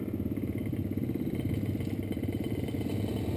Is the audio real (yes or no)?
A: yes